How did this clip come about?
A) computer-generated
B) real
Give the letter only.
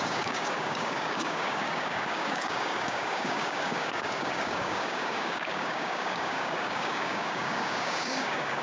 A